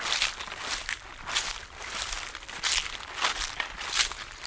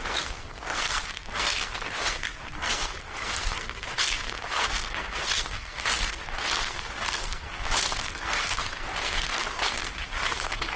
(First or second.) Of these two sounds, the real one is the first